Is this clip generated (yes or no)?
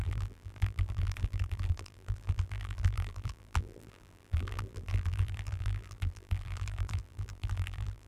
yes